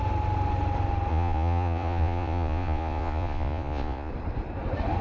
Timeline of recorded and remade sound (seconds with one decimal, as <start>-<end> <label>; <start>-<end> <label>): 0.0-1.1 recorded; 1.1-4.1 remade; 4.1-5.0 recorded